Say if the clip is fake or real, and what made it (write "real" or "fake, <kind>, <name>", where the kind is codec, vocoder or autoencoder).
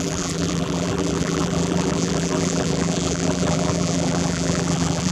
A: fake, vocoder, BigVGAN v2